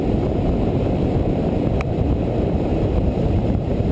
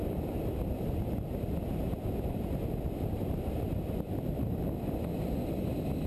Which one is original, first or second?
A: second